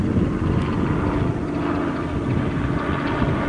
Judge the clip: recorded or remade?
recorded